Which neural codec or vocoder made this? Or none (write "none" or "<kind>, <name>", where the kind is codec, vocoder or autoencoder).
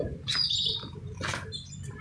none